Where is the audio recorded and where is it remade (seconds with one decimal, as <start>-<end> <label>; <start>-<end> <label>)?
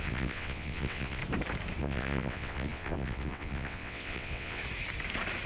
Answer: 0.0-1.2 remade; 1.2-1.8 recorded; 1.8-4.6 remade; 4.6-5.5 recorded